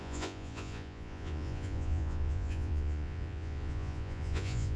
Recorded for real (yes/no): no